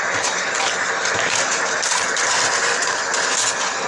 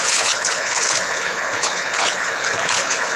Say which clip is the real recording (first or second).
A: first